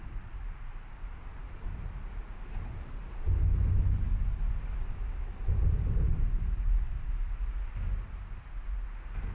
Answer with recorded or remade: remade